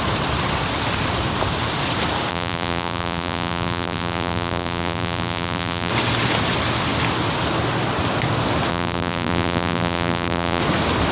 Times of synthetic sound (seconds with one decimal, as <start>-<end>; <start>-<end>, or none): 2.3-5.9; 8.7-10.6